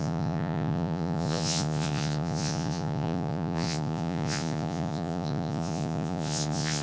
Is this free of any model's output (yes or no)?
no